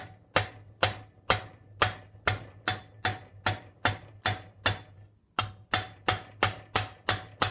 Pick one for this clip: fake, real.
real